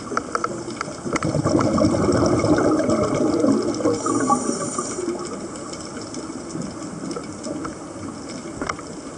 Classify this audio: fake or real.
real